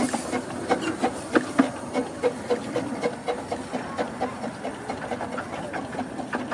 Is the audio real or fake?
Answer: real